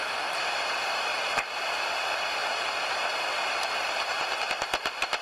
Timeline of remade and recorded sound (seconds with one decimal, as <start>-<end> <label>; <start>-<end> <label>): 0.0-1.1 recorded; 1.1-1.8 remade; 1.8-5.2 recorded